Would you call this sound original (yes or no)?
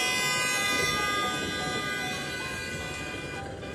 yes